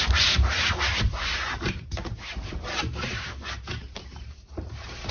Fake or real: fake